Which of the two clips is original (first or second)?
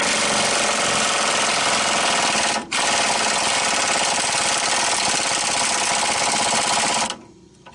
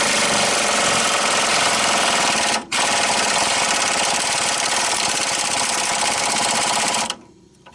first